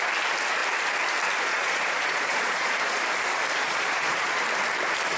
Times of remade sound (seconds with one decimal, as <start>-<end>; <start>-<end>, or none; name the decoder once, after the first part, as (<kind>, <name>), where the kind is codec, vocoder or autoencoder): 1.5-3.0 (vocoder, Vocos); 3.6-4.4